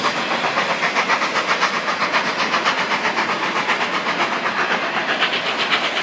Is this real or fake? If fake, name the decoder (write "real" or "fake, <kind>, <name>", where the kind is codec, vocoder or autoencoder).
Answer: real